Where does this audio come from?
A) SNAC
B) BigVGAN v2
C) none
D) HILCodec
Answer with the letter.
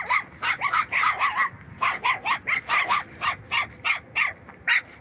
C